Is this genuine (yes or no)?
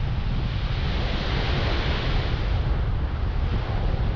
yes